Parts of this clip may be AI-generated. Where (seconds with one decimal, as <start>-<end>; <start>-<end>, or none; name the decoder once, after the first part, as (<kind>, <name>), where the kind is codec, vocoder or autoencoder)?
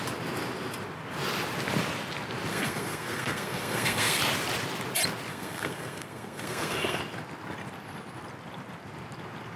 2.5-4.2 (codec, SNAC); 5.3-7.0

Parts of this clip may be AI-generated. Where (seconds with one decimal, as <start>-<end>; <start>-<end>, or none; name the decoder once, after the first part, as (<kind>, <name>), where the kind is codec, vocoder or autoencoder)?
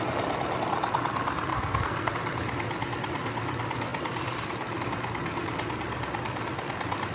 1.5-2.1 (codec, SNAC)